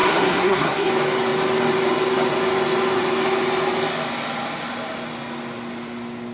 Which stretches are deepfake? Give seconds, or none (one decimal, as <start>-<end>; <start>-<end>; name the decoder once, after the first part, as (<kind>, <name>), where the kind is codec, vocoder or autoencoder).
0.0-0.9 (codec, SNAC)